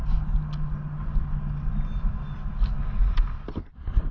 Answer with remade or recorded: recorded